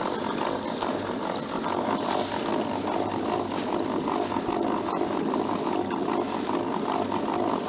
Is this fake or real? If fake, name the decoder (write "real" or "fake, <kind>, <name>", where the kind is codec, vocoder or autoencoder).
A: real